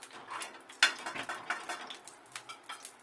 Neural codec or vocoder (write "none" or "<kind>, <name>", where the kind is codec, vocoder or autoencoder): none